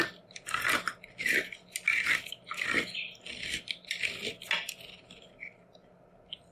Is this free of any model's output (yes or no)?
yes